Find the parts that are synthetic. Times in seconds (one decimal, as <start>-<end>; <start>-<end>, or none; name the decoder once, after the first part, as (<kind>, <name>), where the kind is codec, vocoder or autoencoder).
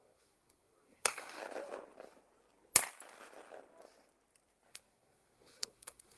0.0-1.4 (codec, SNAC); 4.7-6.2